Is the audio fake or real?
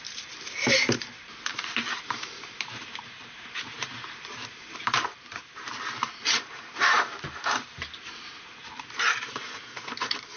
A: fake